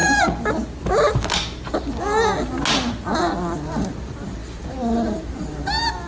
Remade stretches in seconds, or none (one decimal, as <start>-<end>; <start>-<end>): none